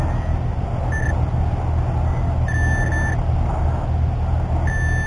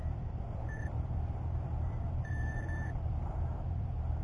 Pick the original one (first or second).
first